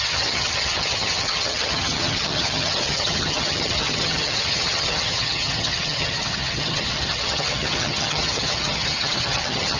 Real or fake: fake